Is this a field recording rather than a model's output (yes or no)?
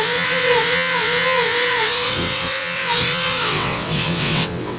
no